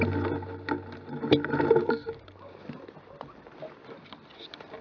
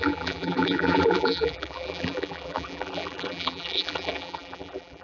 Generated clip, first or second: second